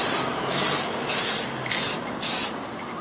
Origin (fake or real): real